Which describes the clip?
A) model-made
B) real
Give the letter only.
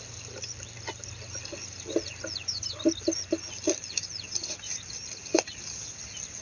B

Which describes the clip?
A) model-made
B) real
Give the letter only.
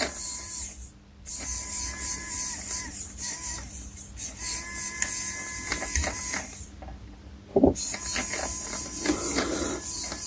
B